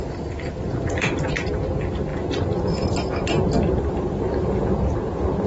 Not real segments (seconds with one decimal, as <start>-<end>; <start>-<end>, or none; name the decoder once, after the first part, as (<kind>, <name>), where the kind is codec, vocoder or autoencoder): none